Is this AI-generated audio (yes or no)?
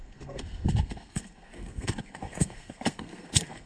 yes